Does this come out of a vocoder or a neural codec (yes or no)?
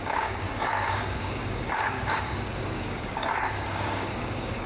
yes